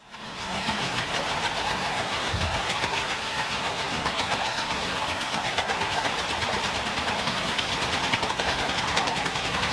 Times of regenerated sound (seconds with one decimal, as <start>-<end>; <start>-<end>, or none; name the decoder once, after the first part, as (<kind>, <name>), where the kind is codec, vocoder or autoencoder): 0.0-1.1 (codec, SNAC); 1.6-6.1; 7.2-7.7; 8.3-9.7